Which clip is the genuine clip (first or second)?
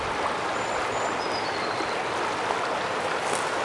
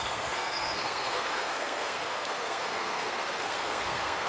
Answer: first